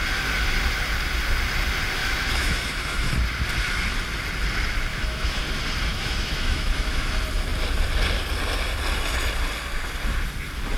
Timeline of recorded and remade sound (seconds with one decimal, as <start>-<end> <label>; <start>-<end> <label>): 0.0-2.0 recorded; 2.0-3.1 remade; 3.1-4.9 recorded; 4.9-5.4 remade; 5.4-5.9 recorded; 5.9-7.1 remade; 7.1-10.8 recorded